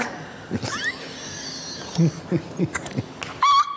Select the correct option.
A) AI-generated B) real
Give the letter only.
B